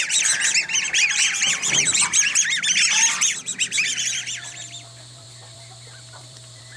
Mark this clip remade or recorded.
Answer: remade